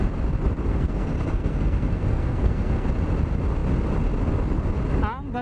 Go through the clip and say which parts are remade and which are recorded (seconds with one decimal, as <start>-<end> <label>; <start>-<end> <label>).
0.0-0.7 recorded; 0.7-2.9 remade; 2.9-5.4 recorded